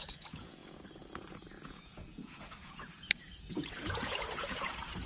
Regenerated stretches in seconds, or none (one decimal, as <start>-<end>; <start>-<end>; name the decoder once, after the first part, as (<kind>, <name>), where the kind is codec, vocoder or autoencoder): 0.0-5.1 (vocoder, Vocos)